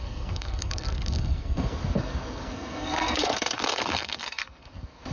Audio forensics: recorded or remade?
remade